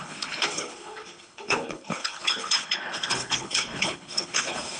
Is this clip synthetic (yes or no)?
yes